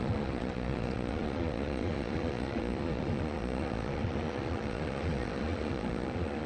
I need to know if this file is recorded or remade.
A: remade